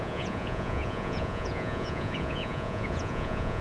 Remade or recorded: remade